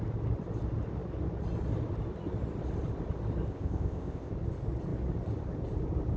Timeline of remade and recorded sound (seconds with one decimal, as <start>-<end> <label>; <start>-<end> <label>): 0.0-3.5 recorded; 3.5-4.3 remade; 4.3-6.2 recorded